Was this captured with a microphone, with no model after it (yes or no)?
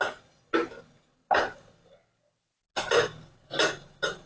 yes